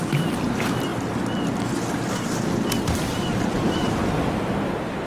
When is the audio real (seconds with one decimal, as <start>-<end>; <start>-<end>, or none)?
0.9-3.0; 4.0-5.1

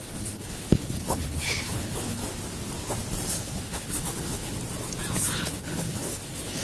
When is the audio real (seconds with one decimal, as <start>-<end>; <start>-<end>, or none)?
2.2-3.3; 4.5-5.1

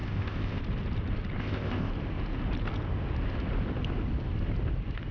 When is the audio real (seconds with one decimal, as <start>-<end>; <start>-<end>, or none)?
0.6-1.4; 1.9-5.1

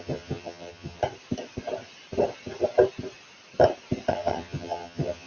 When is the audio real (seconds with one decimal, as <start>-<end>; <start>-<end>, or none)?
1.0-4.1

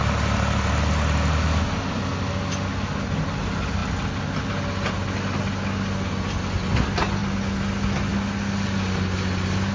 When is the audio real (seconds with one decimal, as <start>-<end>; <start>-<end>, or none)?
0.0-9.7

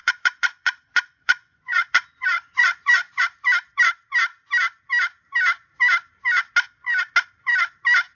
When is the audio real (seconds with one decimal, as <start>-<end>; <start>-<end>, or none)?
3.2-8.1

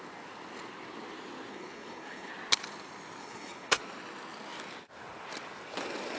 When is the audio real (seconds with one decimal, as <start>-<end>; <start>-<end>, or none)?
0.0-1.5; 2.3-3.2; 3.8-6.2

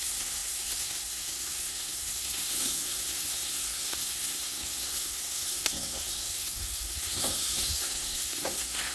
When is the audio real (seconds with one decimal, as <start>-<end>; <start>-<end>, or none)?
none